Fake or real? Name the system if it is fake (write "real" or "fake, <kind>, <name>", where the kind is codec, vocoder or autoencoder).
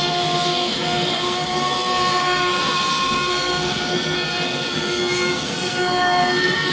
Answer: fake, codec, SNAC